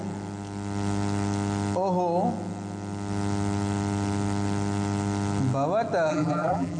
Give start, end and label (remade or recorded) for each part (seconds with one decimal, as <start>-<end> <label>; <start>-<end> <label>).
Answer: 0.0-6.1 recorded; 6.1-6.8 remade